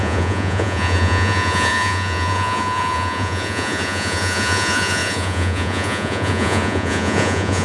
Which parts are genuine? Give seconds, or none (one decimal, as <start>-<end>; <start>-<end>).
none